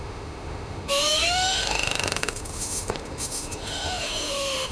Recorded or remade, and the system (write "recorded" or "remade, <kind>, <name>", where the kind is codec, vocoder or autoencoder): remade, autoencoder, DAC-VAE